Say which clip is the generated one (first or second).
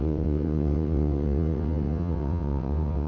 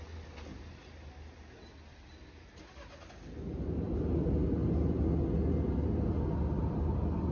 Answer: first